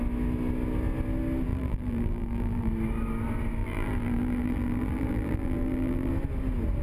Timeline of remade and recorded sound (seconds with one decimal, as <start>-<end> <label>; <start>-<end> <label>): 0.0-1.5 recorded; 1.5-2.7 remade; 2.7-3.6 recorded; 3.6-6.1 remade; 6.1-6.8 recorded